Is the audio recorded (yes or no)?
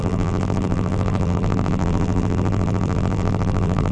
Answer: no